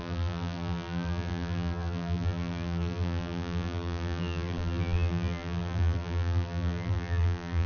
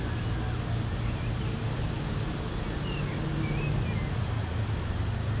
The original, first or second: second